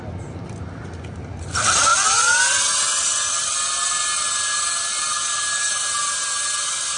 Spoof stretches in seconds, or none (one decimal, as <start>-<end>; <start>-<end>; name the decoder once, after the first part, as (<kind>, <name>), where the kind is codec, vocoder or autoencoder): none